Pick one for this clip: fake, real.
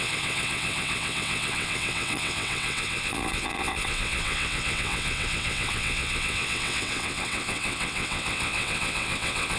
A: fake